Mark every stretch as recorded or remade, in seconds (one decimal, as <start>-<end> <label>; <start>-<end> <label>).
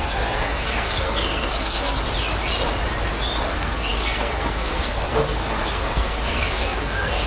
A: 0.0-2.0 remade; 2.0-3.4 recorded; 3.4-7.3 remade